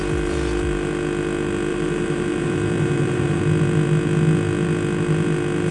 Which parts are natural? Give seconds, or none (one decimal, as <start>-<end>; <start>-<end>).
0.0-1.7; 3.4-5.7